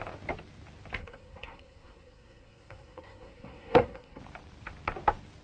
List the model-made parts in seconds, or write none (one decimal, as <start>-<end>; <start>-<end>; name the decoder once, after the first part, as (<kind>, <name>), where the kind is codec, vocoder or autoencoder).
1.0-4.2 (codec, SNAC)